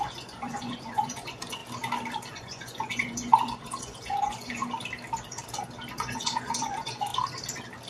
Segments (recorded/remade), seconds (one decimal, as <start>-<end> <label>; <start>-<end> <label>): 0.0-1.6 remade; 1.6-2.3 recorded; 2.3-4.6 remade; 4.6-5.9 recorded; 5.9-7.1 remade; 7.1-7.9 recorded